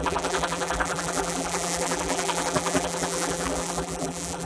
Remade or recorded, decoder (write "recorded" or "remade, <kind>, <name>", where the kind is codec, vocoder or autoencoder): remade, vocoder, BigVGAN v2